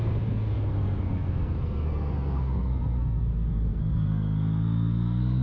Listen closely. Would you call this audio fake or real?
fake